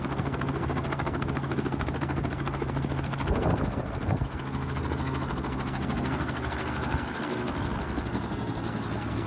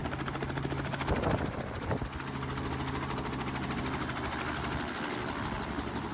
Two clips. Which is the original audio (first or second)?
second